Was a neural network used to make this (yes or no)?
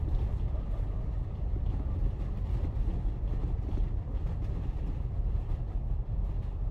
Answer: yes